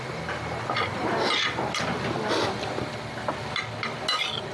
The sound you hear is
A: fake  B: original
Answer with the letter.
B